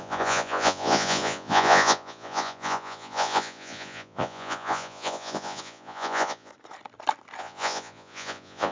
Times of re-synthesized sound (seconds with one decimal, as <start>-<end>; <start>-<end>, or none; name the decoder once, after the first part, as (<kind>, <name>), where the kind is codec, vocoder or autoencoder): 0.0-6.5 (vocoder, Vocos); 7.4-8.7